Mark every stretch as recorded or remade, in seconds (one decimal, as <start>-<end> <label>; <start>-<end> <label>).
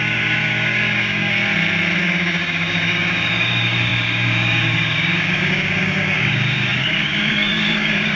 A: 0.0-1.4 remade; 1.4-2.0 recorded; 2.0-8.1 remade